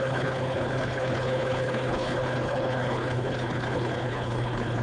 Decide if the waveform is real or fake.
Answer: fake